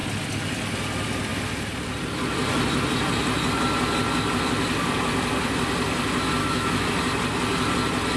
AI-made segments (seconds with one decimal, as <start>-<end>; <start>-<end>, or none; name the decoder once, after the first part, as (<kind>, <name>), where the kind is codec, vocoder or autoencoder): 6.4-6.9 (autoencoder, DAC-VAE)